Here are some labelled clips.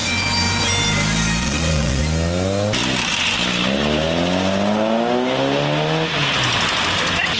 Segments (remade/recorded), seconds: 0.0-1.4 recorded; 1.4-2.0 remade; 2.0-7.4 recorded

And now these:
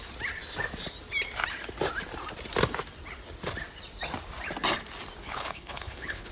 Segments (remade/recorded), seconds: 0.0-5.2 recorded; 5.2-6.3 remade

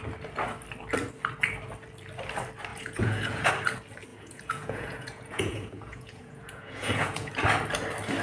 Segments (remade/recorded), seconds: 0.0-2.7 recorded; 2.7-3.5 remade; 3.5-4.1 recorded; 4.1-7.3 remade; 7.3-8.2 recorded